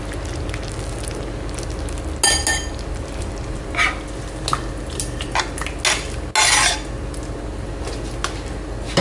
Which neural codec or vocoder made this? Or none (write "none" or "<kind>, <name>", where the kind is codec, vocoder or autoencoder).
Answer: none